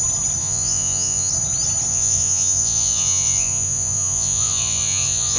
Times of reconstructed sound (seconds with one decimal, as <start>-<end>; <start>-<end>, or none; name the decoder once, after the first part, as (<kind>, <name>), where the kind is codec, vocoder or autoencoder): 0.4-1.3 (vocoder, Vocos); 1.9-5.4